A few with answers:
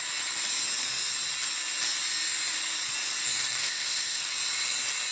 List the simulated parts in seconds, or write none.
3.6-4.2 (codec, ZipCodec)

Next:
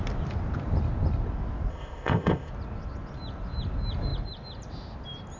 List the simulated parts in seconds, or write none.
1.7-2.5 (codec, ZipCodec)

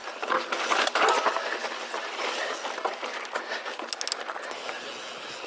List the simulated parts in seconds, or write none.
none